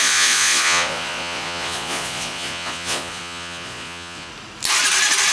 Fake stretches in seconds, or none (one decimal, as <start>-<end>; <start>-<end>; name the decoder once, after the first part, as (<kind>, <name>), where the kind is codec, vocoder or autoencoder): 0.0-4.3 (vocoder, Vocos)